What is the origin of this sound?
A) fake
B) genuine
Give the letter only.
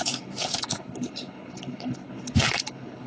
A